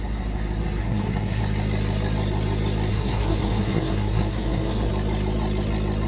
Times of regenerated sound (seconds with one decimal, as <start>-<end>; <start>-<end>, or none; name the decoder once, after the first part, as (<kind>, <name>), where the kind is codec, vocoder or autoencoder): 0.8-1.4 (codec, SNAC); 2.9-4.9

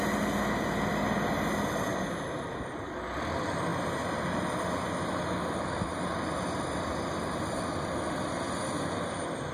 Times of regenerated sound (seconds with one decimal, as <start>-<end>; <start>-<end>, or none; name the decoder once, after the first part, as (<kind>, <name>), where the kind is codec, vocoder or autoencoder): none

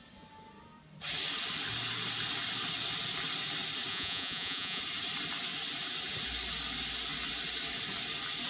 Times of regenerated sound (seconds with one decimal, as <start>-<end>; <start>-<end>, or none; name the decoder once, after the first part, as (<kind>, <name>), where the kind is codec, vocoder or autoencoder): 3.9-4.8 (vocoder, Vocos)

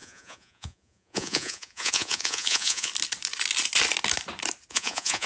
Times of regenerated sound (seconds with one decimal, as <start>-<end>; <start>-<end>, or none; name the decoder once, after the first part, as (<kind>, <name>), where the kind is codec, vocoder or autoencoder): 0.0-2.9 (vocoder, Vocos); 4.7-5.3

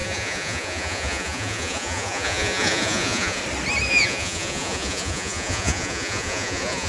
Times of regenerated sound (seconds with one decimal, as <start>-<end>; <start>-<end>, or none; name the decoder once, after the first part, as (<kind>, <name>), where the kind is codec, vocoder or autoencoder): 0.0-3.4 (vocoder, Vocos); 3.9-6.9